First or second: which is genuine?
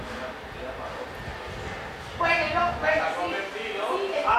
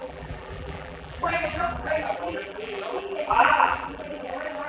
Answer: first